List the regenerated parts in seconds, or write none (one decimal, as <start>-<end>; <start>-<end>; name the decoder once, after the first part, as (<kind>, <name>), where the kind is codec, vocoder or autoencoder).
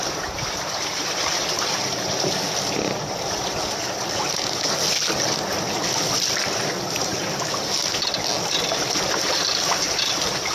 none